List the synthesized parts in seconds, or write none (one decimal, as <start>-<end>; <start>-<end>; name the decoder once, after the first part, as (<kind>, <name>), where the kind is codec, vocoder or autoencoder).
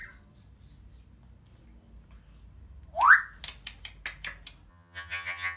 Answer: 4.7-5.6 (vocoder, HiFi-GAN)